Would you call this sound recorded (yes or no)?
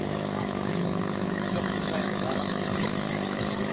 no